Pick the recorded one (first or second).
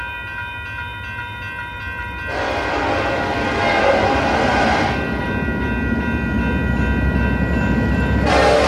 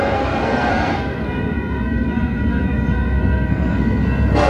first